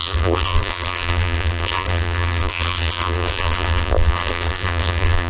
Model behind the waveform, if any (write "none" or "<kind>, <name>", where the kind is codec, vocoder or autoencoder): vocoder, BigVGAN v2